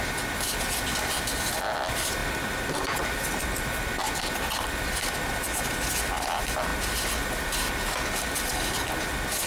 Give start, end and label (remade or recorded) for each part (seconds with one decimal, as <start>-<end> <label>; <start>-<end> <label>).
0.0-2.2 recorded; 2.2-3.4 remade; 3.4-9.5 recorded